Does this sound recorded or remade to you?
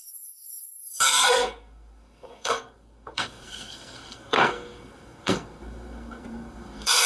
remade